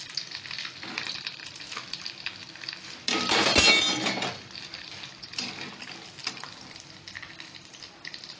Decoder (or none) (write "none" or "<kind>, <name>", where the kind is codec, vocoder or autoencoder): none